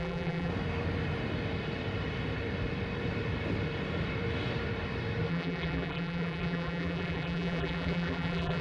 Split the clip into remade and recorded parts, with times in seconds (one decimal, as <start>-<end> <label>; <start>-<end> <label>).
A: 0.0-0.5 remade; 0.5-5.3 recorded; 5.3-8.6 remade